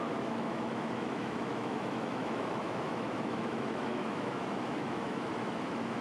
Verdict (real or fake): fake